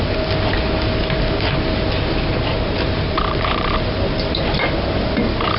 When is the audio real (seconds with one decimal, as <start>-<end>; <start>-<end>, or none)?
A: 0.0-2.5; 3.7-5.6